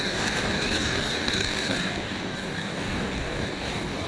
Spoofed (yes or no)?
yes